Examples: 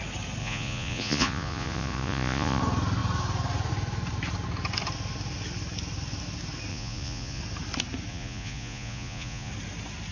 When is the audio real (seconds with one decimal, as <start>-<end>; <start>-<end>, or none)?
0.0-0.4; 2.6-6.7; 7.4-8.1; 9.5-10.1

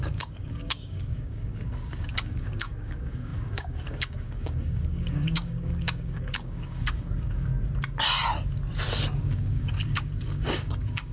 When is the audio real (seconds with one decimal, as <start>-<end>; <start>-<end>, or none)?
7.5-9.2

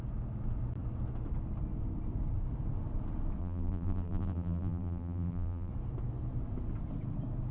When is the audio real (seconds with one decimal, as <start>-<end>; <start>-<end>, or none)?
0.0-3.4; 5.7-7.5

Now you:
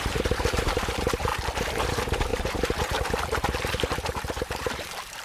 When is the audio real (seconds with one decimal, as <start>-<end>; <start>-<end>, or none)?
1.3-1.9

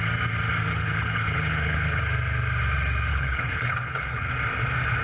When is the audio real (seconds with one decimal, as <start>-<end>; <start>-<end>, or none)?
0.0-0.7; 2.0-3.1; 4.3-5.0

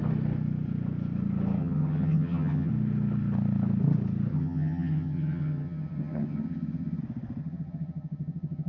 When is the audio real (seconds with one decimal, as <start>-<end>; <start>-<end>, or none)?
0.0-1.6; 2.7-4.3; 7.0-7.4